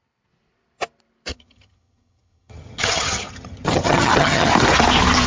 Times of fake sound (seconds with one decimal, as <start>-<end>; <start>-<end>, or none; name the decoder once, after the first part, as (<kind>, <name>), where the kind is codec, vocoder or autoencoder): 1.3-4.5 (vocoder, HiFi-GAN)